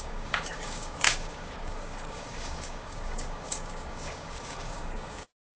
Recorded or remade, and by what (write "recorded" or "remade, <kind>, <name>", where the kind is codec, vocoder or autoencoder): remade, codec, DAC